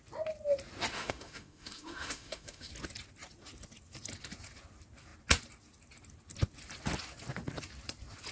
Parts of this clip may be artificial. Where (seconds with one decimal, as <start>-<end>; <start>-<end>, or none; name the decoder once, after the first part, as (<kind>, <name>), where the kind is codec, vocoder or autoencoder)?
0.9-2.7 (autoencoder, DAC-VAE)

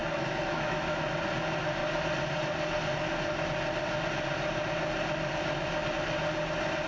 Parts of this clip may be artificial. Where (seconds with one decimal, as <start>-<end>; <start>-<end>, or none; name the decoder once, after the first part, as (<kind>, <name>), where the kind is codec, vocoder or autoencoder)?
0.0-1.1 (autoencoder, DAC-VAE)

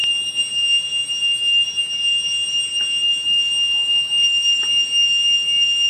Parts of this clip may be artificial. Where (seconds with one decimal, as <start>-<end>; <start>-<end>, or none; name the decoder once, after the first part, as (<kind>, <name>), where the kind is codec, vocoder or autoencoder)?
3.8-4.6 (autoencoder, DAC-VAE)

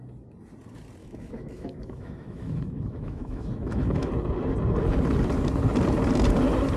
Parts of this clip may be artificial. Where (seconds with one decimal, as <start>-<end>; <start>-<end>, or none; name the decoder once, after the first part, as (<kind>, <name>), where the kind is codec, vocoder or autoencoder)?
1.0-4.1 (autoencoder, DAC-VAE)